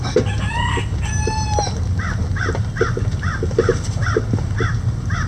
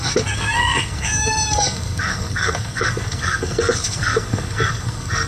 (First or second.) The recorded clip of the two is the first